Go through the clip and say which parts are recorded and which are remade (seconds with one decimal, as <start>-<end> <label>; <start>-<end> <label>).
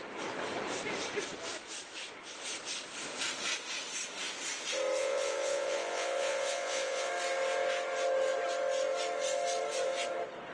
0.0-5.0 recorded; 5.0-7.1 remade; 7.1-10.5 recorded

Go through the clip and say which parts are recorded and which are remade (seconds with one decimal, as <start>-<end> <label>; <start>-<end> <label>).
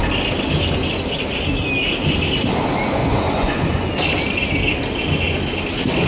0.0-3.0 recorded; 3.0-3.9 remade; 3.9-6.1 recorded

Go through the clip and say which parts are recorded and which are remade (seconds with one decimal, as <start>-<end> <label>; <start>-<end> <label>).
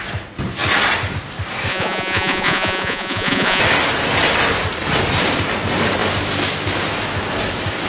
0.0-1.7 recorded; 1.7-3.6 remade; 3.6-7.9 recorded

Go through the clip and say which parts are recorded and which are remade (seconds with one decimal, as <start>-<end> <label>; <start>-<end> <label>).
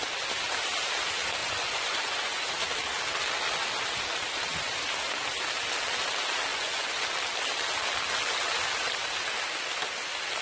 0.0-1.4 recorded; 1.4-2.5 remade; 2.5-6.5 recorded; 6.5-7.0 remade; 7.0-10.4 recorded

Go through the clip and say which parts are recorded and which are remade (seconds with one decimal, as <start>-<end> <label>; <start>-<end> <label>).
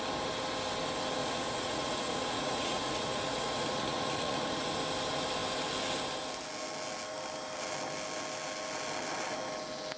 0.0-1.2 recorded; 1.2-4.7 remade; 4.7-10.0 recorded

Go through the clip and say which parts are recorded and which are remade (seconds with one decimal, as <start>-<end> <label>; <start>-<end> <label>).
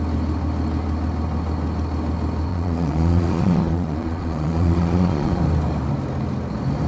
0.0-2.5 recorded; 2.5-5.4 remade; 5.4-6.9 recorded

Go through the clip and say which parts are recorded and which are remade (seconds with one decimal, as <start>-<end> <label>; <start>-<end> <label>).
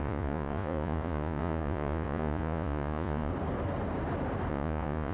0.0-3.3 remade; 3.3-4.5 recorded; 4.5-5.1 remade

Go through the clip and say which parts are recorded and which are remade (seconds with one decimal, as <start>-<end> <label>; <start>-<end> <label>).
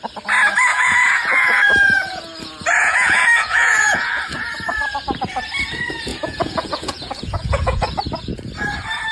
0.0-0.7 recorded; 0.7-2.2 remade; 2.2-2.8 recorded; 2.8-4.2 remade; 4.2-6.1 recorded; 6.1-8.0 remade; 8.0-9.1 recorded